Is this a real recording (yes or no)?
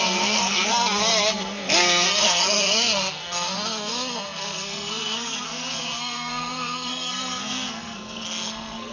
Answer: no